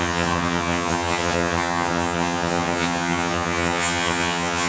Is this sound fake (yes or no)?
yes